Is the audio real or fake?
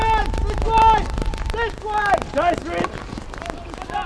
real